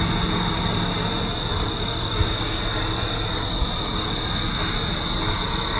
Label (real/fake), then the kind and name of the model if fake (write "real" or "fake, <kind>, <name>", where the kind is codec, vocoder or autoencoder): real